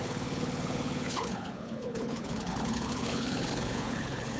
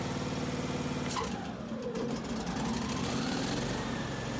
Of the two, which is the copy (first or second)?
first